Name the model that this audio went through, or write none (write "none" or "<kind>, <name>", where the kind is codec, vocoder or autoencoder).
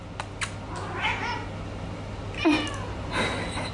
none